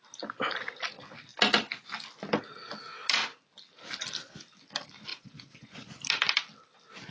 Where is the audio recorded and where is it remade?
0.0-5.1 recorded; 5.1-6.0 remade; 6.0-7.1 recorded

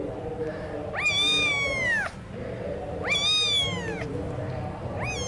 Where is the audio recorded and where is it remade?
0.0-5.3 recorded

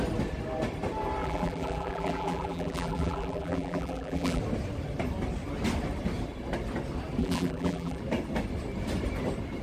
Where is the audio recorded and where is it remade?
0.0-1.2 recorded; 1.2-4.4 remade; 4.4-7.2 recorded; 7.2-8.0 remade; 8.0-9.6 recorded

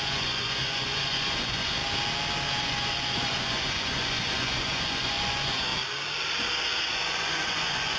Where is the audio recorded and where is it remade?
0.0-1.8 remade; 1.8-2.6 recorded; 2.6-5.7 remade; 5.7-6.9 recorded; 6.9-8.0 remade

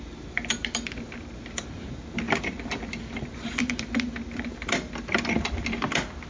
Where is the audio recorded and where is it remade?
0.0-6.3 recorded

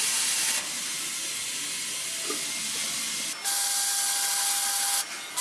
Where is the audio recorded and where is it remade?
0.0-5.4 recorded